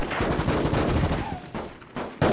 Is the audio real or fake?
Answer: real